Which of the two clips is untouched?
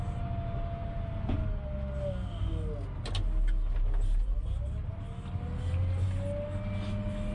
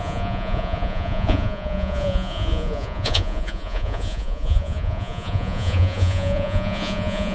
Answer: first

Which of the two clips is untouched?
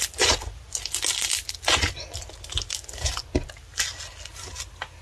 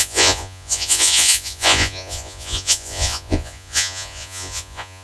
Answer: first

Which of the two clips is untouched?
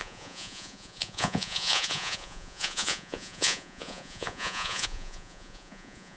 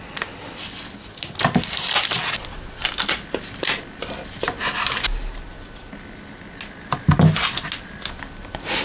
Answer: second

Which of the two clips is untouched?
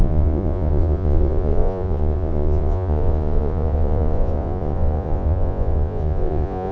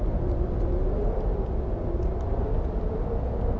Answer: second